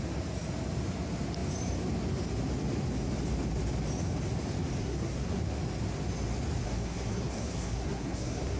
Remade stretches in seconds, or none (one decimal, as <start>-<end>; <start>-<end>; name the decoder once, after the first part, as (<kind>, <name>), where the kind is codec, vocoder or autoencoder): 4.8-5.4 (codec, SNAC); 6.6-8.6